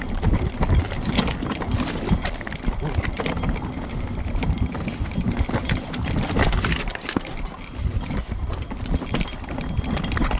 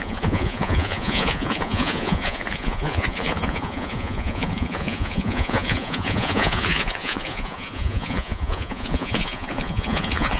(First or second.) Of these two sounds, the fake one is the second